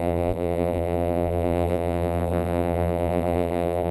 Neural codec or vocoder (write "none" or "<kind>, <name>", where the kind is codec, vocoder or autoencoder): vocoder, BigVGAN v2